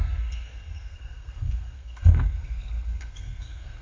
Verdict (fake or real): fake